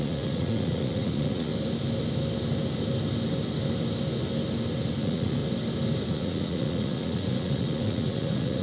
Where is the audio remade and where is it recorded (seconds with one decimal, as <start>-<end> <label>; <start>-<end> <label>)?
0.0-1.5 remade; 1.5-5.0 recorded; 5.0-5.4 remade; 5.4-6.1 recorded; 6.1-8.6 remade